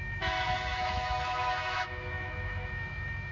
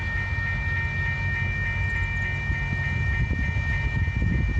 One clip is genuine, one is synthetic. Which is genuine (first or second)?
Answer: second